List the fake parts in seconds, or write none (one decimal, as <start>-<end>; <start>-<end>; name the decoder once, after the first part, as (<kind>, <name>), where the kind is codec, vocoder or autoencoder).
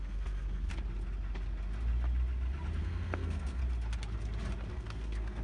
0.0-0.7 (codec, SNAC); 2.8-3.6; 4.7-5.4